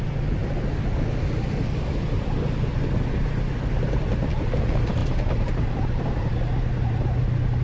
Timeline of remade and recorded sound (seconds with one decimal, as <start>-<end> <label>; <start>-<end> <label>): 0.0-5.0 recorded; 5.0-6.3 remade; 6.3-7.6 recorded